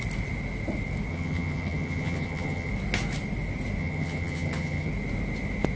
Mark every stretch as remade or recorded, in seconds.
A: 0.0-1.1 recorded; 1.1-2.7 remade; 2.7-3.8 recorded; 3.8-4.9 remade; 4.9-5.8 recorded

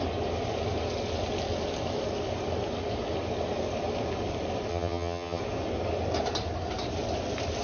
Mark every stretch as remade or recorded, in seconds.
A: 0.0-4.7 recorded; 4.7-5.4 remade; 5.4-7.6 recorded

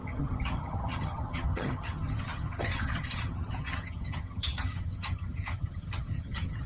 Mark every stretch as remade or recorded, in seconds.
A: 0.0-6.7 remade

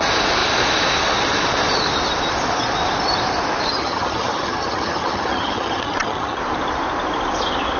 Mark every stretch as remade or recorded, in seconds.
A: 0.0-3.7 recorded; 3.7-6.4 remade; 6.4-7.8 recorded

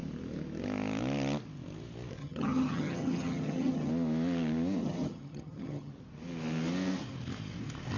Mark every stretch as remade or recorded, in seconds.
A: 0.0-2.2 recorded; 2.2-3.9 remade; 3.9-4.8 recorded; 4.8-5.9 remade; 5.9-8.0 recorded

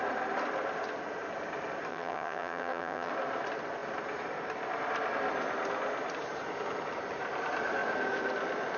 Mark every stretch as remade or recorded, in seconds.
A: 0.0-1.9 recorded; 1.9-3.1 remade; 3.1-8.8 recorded